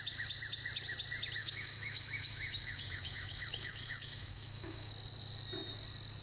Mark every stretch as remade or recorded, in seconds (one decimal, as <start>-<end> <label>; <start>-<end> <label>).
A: 0.0-1.4 recorded; 1.4-4.9 remade; 4.9-6.2 recorded